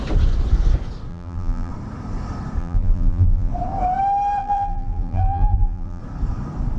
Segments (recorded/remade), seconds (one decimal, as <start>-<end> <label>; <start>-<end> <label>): 0.0-1.1 recorded; 1.1-1.7 remade; 1.7-2.6 recorded; 2.6-3.5 remade; 3.5-4.4 recorded; 4.4-6.0 remade; 6.0-6.8 recorded